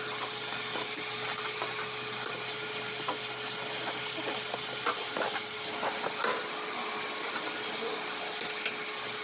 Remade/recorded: recorded